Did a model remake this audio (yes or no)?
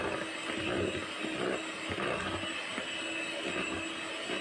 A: no